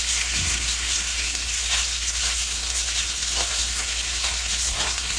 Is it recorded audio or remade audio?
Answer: remade